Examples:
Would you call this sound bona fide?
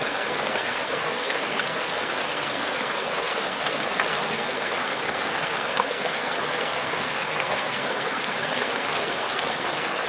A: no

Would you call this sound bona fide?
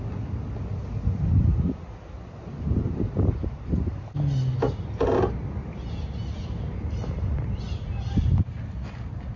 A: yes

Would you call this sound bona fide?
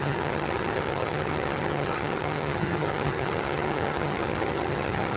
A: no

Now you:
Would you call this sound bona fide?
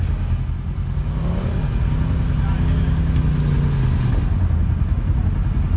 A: yes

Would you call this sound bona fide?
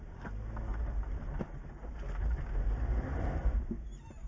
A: yes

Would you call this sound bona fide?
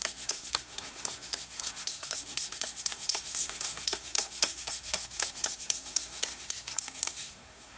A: no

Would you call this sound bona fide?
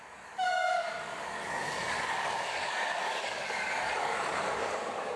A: no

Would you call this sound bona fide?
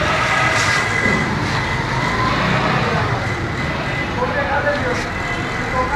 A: yes